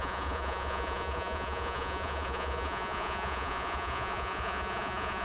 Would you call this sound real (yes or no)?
no